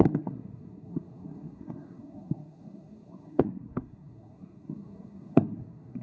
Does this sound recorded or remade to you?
remade